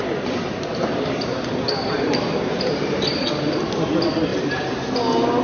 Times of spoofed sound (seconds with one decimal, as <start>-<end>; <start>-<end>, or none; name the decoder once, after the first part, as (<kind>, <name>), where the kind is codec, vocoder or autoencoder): 0.0-3.2 (vocoder, BigVGAN v2); 4.3-4.9